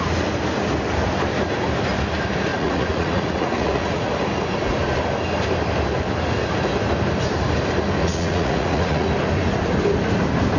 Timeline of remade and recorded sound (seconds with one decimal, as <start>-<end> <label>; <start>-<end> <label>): 0.0-2.5 recorded; 2.5-4.1 remade; 4.1-8.0 recorded; 8.0-9.1 remade; 9.1-10.6 recorded